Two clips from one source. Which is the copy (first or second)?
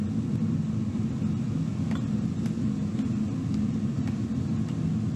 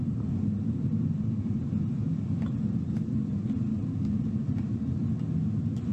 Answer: second